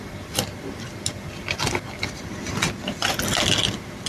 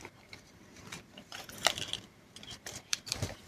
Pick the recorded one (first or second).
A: first